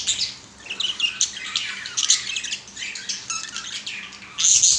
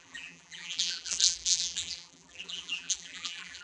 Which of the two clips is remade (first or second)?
second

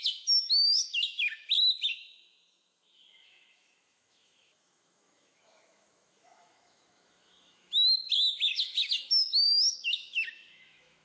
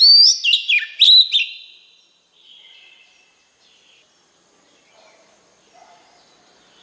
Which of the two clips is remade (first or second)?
first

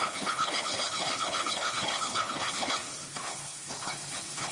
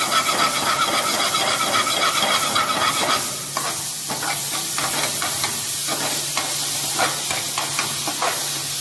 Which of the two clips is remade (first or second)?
first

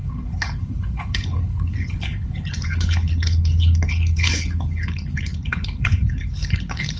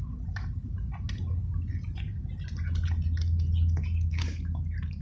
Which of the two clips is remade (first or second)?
first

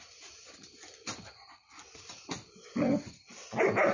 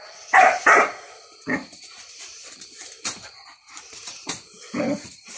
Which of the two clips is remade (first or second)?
second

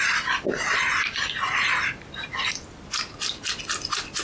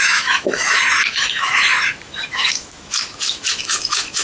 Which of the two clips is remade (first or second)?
second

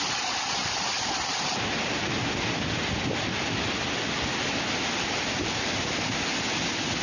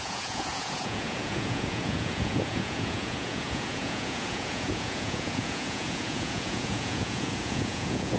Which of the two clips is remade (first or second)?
second